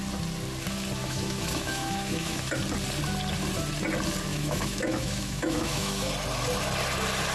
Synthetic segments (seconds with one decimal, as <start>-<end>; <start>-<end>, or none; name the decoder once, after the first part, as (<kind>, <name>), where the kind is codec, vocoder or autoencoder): 1.0-2.5 (autoencoder, DAC-VAE); 4.3-6.1